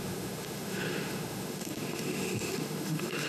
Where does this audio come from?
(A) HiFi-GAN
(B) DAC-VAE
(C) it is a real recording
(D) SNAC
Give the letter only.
B